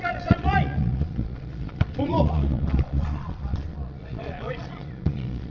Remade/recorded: remade